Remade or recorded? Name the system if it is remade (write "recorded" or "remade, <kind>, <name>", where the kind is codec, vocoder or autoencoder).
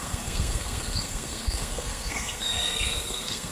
remade, codec, SNAC